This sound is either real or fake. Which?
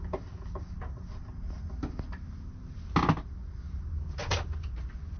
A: real